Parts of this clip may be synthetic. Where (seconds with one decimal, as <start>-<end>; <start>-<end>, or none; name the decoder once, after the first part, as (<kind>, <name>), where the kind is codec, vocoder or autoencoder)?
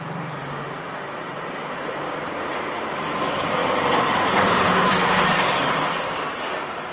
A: 0.0-0.4 (vocoder, BigVGAN v2); 1.1-6.9